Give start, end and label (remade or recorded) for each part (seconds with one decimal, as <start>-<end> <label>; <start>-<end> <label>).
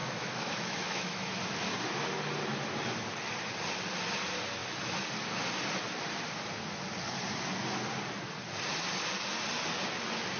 0.0-1.3 remade; 1.3-10.4 recorded